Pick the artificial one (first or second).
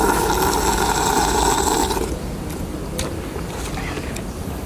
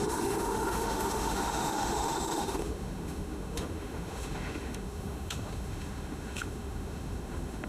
second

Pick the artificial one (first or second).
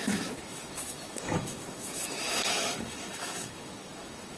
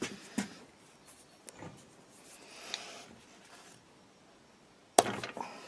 first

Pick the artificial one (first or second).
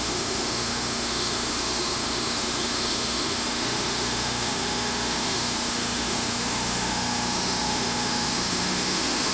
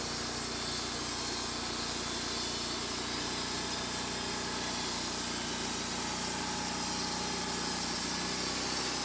first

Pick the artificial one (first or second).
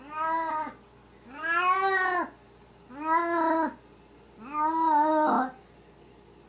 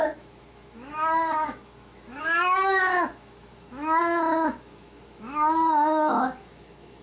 second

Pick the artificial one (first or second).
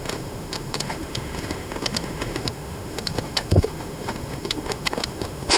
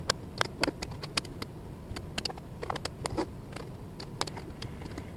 first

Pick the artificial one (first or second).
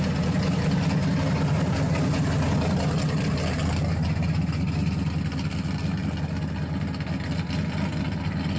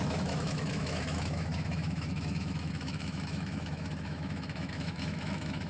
second